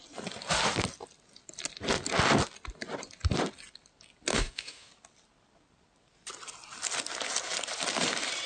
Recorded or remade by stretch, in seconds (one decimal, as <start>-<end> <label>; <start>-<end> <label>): 0.0-4.3 recorded; 4.3-4.9 remade; 4.9-8.5 recorded